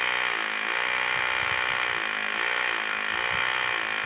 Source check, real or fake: real